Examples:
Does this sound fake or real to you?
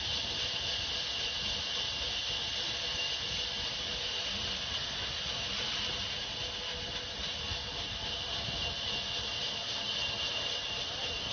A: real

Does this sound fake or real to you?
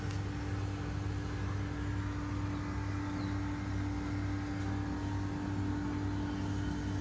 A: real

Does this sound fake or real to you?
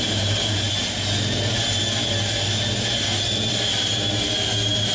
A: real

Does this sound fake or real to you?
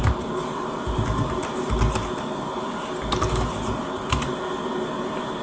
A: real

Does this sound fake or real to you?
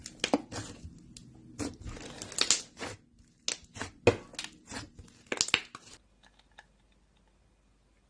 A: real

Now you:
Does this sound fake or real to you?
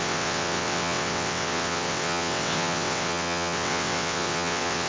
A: fake